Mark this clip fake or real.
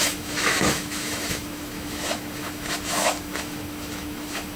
fake